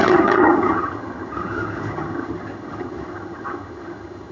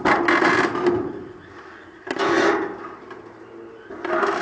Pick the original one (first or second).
second